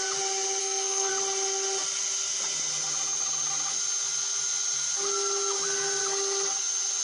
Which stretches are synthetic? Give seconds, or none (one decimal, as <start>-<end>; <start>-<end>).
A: 0.6-1.1